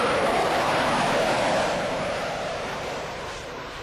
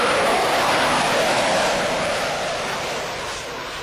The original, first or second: second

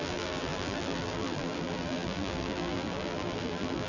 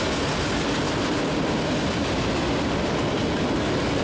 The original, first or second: second